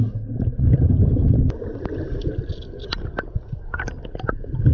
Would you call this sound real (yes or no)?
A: yes